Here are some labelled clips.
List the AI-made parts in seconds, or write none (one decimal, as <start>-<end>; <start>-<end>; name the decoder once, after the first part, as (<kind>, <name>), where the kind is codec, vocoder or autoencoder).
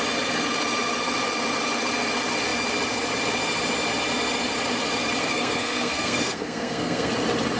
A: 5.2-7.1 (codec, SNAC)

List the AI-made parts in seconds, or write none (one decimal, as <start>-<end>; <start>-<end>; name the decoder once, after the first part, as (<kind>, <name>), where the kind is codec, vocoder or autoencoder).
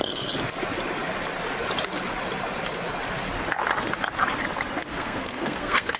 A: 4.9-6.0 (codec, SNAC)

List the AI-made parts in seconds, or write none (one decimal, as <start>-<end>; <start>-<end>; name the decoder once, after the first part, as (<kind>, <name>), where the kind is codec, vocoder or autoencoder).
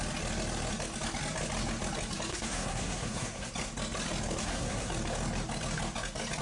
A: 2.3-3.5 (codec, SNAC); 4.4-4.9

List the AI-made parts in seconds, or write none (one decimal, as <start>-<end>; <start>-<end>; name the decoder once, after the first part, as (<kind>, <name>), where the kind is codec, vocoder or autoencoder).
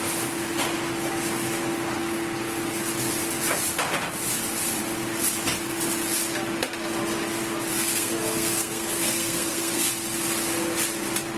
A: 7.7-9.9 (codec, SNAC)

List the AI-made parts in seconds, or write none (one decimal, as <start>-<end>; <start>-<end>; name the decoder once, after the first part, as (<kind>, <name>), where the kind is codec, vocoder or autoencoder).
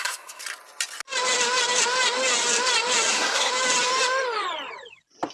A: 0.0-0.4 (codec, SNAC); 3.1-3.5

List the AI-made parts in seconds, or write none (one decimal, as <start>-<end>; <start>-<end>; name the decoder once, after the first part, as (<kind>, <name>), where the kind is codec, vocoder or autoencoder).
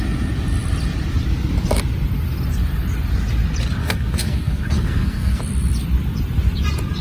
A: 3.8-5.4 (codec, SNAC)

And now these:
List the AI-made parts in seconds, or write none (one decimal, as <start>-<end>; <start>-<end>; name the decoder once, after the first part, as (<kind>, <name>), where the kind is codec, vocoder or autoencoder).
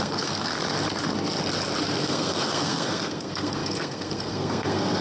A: 0.0-0.5 (codec, SNAC); 2.0-5.0